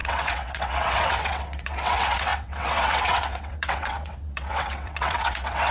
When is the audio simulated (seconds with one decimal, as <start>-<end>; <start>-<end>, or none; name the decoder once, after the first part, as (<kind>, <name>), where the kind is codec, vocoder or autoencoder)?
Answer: 0.0-5.7 (vocoder, WaveNeXt)